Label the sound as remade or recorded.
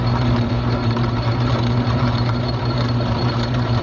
remade